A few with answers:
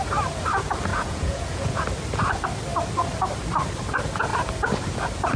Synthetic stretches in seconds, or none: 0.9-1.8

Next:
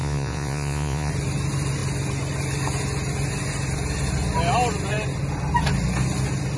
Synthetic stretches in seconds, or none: 0.0-1.1

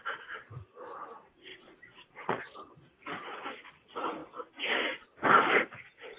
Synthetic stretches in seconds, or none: 1.5-2.4

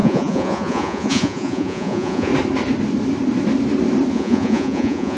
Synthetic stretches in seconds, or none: 0.0-2.3; 4.1-5.2

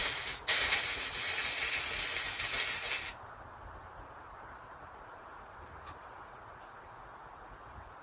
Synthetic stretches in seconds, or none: 0.0-1.9; 4.4-8.0

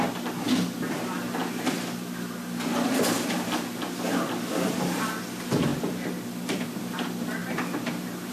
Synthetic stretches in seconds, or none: none

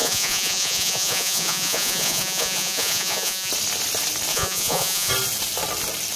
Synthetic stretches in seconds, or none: 0.0-3.5; 4.3-5.1